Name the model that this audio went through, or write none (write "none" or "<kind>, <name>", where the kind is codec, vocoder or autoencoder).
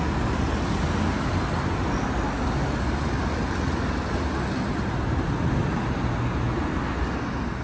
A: none